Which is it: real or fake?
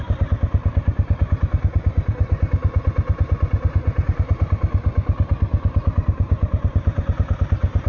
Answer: fake